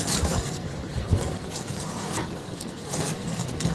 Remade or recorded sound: remade